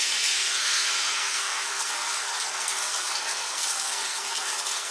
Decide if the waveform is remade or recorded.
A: remade